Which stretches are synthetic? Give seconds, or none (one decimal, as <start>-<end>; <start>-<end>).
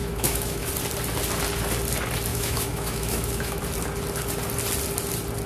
0.0-0.7; 2.3-3.6